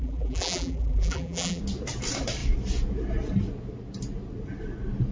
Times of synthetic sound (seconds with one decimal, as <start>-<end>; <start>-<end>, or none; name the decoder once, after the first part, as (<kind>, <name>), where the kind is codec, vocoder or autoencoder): 0.0-1.6 (vocoder, BigVGAN v2)